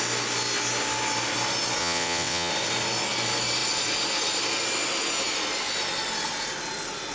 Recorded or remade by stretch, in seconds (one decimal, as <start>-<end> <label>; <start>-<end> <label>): 0.0-1.8 recorded; 1.8-2.5 remade; 2.5-7.1 recorded

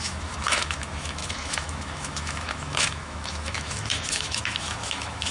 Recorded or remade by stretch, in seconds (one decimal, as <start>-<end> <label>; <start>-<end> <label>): 0.0-5.3 remade

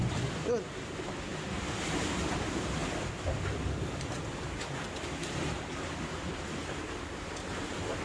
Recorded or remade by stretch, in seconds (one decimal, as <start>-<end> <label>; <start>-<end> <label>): 0.0-5.2 recorded; 5.2-6.3 remade; 6.3-8.0 recorded

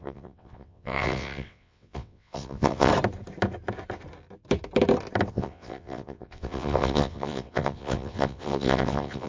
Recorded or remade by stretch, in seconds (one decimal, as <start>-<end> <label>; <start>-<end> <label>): 0.0-2.9 remade; 2.9-5.3 recorded; 5.3-9.3 remade